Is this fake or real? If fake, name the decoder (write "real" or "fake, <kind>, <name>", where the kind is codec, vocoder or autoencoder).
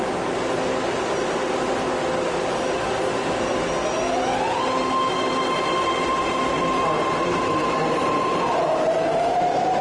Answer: real